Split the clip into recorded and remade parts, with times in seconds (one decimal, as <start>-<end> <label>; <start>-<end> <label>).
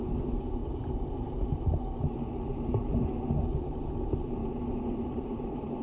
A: 0.0-5.8 recorded